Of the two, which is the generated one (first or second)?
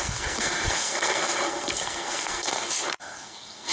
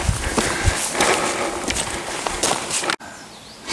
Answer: first